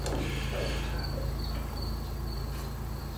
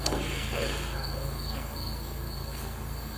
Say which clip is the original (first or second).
first